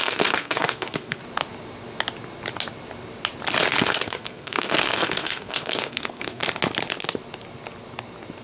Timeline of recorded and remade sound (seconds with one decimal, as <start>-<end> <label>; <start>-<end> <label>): 0.0-1.2 remade; 1.2-3.8 recorded; 3.8-6.4 remade; 6.4-8.4 recorded